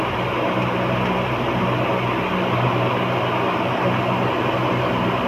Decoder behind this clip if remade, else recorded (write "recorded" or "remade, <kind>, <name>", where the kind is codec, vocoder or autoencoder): recorded